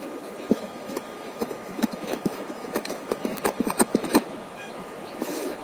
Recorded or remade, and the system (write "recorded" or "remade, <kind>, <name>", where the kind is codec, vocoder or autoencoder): remade, autoencoder, DAC-VAE